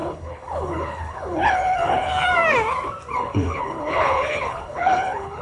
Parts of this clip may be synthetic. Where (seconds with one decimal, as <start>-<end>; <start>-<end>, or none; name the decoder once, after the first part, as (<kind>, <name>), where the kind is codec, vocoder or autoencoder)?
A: 0.0-2.1 (codec, HILCodec); 3.1-5.4